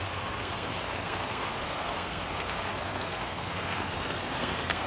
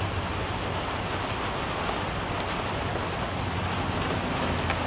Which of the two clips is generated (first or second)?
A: first